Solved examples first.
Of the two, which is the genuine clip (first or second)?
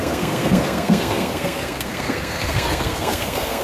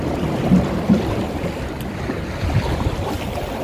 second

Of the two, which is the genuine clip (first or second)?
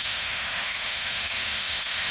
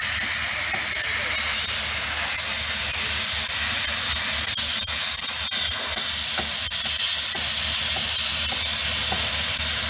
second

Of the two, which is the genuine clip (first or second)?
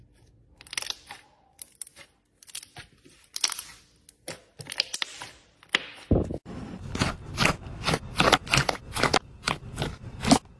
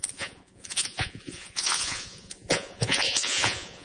first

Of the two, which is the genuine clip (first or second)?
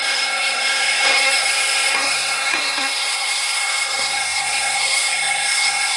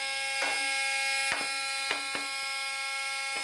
second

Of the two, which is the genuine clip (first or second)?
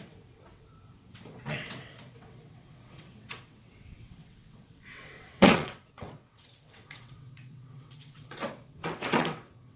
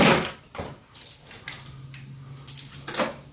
second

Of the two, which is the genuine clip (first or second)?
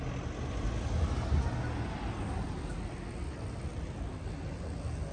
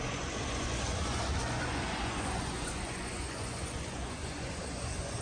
first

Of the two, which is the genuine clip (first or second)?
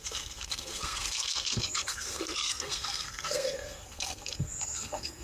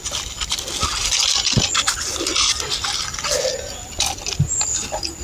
second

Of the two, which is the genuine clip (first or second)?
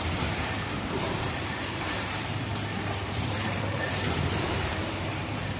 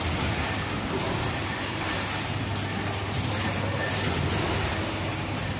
second